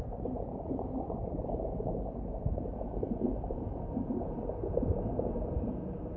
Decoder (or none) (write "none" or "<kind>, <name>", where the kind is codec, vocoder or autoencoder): vocoder, BigVGAN v2